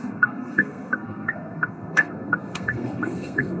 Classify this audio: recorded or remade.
remade